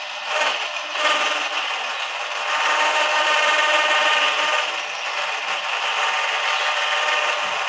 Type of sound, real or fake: real